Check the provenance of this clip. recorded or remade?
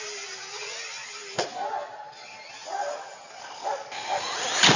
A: recorded